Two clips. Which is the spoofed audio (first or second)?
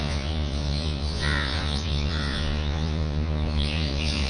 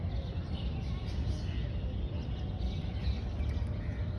first